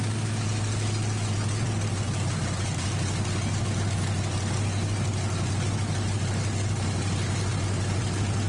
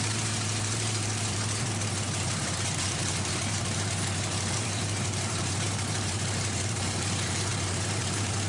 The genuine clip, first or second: first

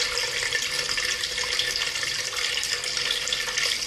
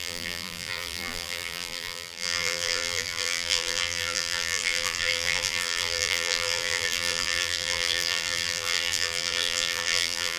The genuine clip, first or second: first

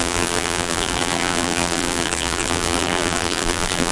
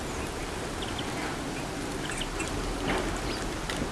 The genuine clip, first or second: second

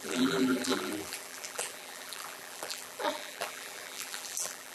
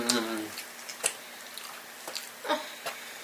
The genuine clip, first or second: second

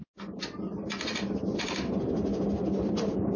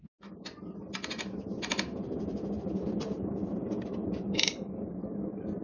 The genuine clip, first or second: first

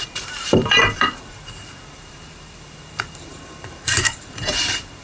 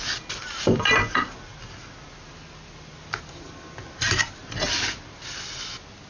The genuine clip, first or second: second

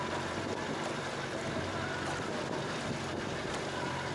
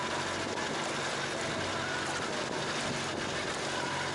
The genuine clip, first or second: second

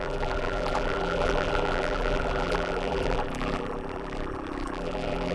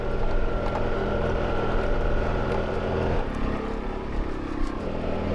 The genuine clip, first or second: second